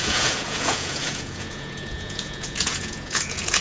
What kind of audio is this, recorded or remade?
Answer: remade